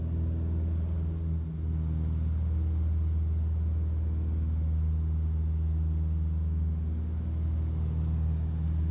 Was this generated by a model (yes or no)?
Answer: no